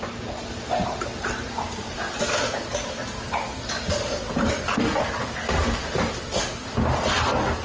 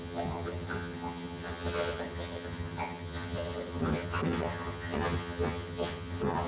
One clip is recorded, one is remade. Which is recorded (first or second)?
first